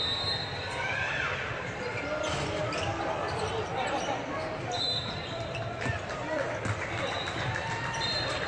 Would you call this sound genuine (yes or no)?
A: no